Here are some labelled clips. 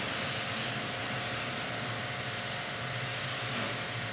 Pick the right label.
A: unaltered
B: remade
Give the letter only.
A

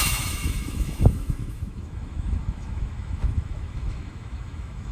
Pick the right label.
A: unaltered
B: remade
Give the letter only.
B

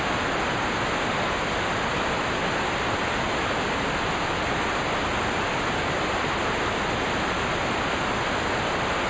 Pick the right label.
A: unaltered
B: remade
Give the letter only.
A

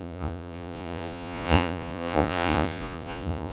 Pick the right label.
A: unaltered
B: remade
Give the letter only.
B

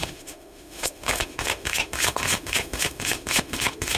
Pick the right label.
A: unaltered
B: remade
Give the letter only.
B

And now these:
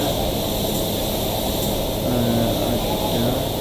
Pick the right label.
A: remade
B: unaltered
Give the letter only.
B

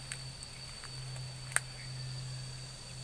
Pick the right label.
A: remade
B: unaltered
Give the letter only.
B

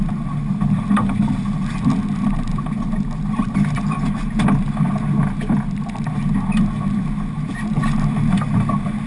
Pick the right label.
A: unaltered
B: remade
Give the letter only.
A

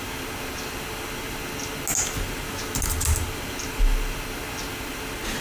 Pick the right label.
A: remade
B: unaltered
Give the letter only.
B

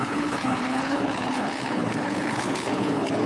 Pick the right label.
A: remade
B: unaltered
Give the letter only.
A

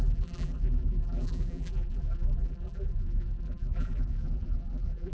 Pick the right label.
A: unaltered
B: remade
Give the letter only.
B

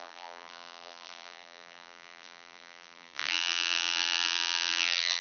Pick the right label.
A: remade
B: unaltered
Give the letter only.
A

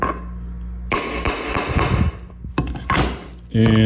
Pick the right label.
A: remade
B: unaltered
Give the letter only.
B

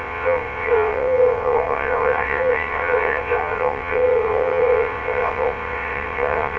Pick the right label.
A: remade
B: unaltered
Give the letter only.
A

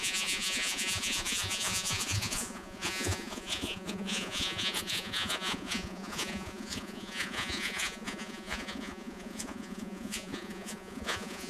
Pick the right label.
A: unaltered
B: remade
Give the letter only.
B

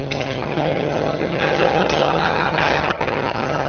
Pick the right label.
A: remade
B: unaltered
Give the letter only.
A